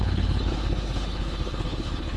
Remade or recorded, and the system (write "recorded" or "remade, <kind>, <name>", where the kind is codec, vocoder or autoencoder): remade, codec, HILCodec